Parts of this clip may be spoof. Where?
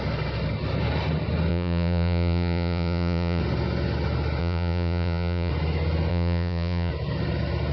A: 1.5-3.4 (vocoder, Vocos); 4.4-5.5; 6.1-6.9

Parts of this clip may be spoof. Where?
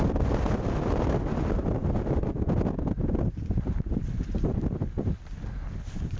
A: none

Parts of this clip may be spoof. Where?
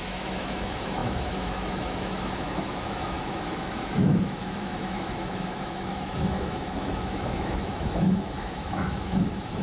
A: 0.0-9.6 (autoencoder, DAC-VAE)